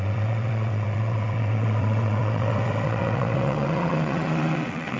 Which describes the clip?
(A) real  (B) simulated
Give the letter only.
B